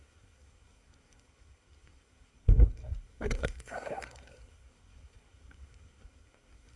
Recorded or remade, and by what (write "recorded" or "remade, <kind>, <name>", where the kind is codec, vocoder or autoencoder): remade, codec, SNAC